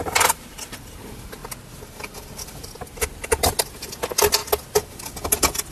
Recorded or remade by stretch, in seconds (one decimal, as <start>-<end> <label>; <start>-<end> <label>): 0.0-5.7 recorded